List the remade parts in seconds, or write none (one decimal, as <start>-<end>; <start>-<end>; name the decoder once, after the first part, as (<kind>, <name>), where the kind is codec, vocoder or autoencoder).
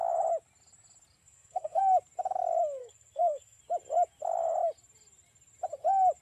1.2-1.8 (codec, SNAC); 2.8-3.6